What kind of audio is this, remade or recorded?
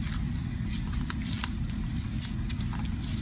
recorded